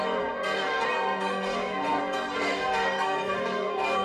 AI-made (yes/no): yes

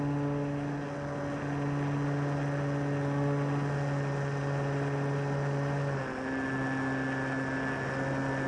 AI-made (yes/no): no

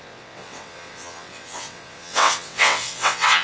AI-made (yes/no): yes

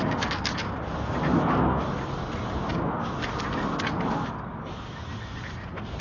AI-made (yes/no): no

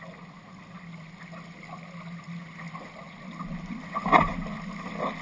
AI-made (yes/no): no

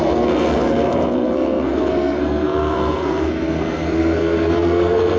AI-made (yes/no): yes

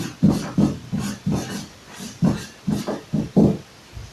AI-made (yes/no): yes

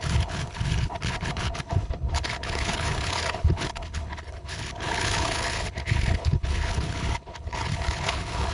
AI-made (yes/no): yes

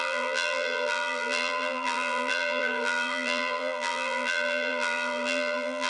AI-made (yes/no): yes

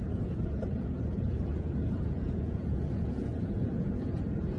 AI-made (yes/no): yes